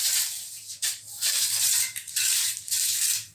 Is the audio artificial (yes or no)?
yes